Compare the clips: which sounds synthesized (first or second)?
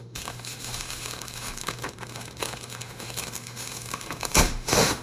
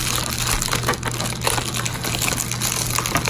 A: first